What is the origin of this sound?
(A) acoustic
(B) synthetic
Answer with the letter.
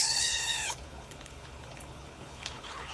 B